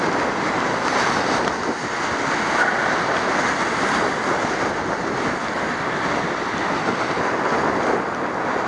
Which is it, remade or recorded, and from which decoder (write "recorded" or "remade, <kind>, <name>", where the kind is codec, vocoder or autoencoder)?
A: recorded